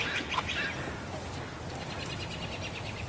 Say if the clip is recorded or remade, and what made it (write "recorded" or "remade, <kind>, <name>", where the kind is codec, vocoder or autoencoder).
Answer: recorded